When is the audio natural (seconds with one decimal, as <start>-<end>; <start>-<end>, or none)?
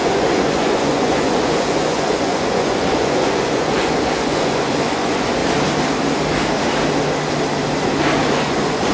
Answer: 5.4-8.3